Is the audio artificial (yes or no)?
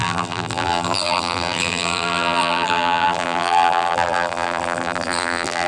yes